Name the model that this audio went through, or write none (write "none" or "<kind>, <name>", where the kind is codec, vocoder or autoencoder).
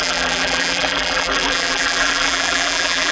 vocoder, BigVGAN v2